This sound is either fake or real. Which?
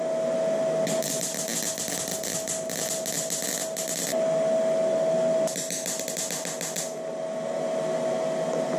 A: real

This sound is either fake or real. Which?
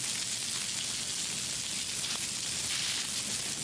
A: real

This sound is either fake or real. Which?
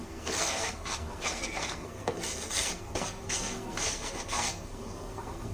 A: fake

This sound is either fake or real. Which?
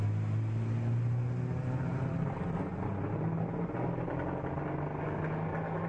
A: real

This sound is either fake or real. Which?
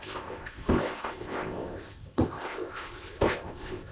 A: fake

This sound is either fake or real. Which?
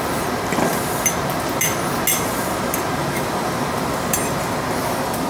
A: real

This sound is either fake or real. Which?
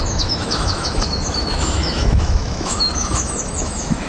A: fake